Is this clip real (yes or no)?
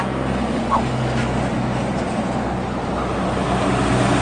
yes